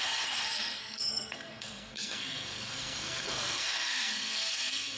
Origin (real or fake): fake